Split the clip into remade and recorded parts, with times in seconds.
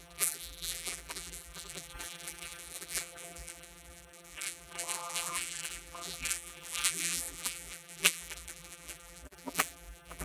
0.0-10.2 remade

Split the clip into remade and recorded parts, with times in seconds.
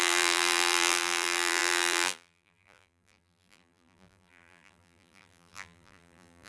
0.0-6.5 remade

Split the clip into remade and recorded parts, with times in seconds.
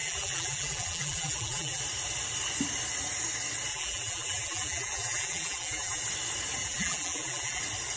0.0-1.8 remade; 1.8-3.7 recorded; 3.7-6.0 remade; 6.0-6.6 recorded; 6.6-7.6 remade; 7.6-8.0 recorded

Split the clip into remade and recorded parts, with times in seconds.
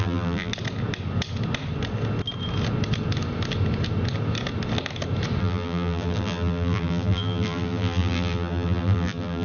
0.0-0.5 remade; 0.5-5.4 recorded; 5.4-9.4 remade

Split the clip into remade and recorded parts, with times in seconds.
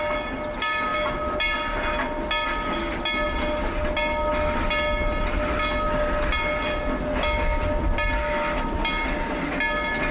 0.0-10.1 recorded